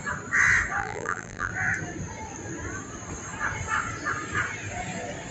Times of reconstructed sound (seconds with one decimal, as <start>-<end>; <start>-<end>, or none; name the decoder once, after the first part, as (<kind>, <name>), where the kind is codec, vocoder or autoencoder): 0.8-1.5 (vocoder, BigVGAN v2)